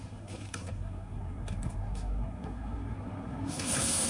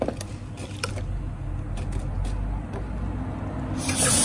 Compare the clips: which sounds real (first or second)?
second